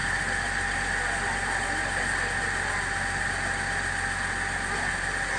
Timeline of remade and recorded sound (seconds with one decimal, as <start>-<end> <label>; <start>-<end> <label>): 0.0-5.4 recorded